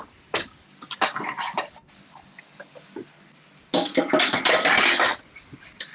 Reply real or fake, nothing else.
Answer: real